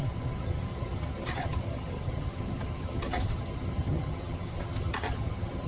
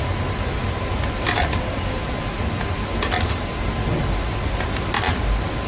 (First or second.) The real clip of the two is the second